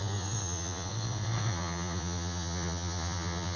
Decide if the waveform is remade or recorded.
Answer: remade